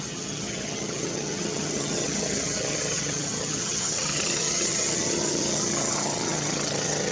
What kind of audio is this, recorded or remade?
remade